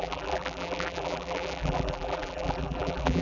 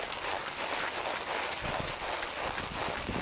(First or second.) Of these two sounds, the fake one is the first